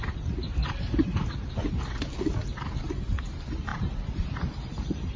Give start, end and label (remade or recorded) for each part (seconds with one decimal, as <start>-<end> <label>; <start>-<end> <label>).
0.0-3.1 recorded; 3.1-5.2 remade